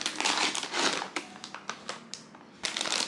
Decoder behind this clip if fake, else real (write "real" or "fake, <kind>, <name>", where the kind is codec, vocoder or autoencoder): real